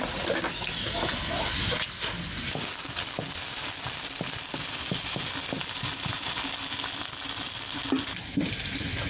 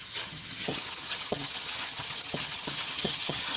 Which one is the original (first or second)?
first